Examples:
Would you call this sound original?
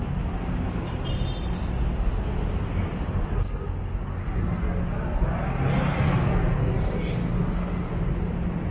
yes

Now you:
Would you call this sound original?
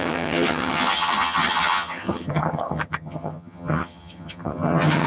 no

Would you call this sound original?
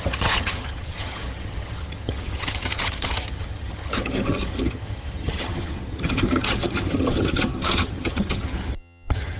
no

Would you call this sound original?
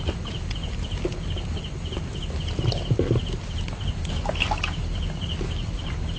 yes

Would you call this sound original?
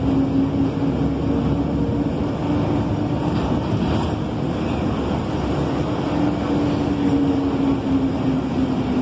yes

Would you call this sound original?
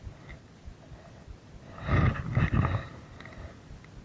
yes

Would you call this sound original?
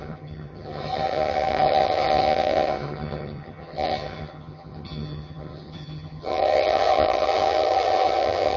no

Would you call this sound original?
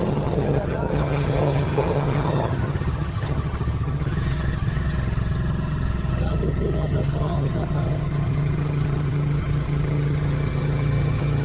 no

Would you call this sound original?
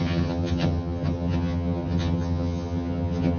no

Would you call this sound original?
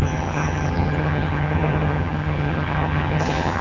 no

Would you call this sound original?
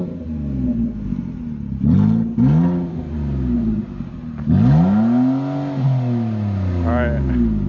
yes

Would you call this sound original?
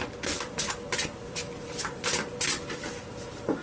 yes